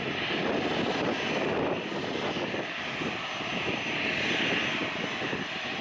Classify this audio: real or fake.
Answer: real